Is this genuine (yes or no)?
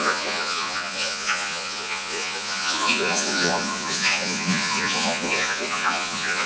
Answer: no